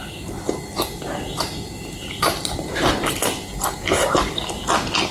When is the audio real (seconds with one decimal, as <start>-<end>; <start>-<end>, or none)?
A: 2.4-4.0; 4.6-5.1